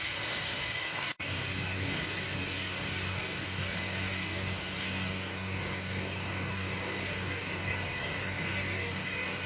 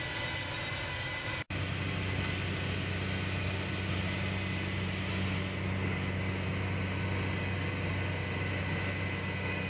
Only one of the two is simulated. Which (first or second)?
first